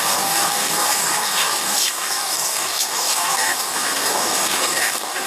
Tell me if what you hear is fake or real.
fake